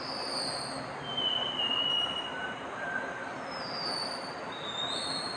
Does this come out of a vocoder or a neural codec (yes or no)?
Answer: no